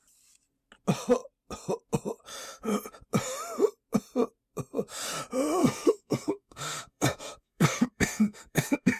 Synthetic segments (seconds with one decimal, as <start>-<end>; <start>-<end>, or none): 5.6-9.0